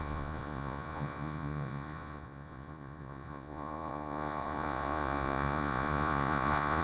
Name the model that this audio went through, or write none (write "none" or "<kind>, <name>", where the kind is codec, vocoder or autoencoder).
vocoder, Vocos